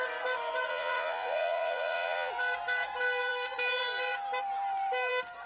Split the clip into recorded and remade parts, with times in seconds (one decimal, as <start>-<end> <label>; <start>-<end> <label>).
0.0-0.7 recorded; 0.7-2.3 remade; 2.3-5.5 recorded